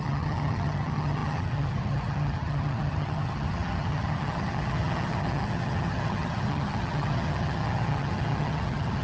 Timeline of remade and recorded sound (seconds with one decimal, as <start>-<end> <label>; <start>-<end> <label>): 0.0-9.0 remade